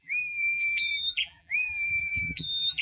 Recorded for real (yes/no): no